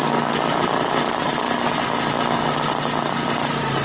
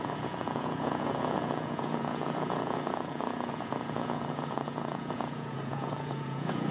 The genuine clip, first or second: first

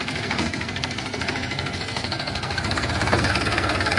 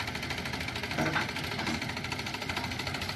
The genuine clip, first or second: second